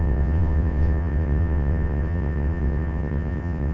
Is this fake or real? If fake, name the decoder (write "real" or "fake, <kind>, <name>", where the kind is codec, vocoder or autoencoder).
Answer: fake, vocoder, WaveNeXt